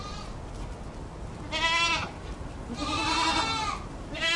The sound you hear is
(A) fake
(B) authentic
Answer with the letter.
B